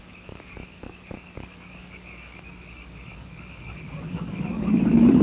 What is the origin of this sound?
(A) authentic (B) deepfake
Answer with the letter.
B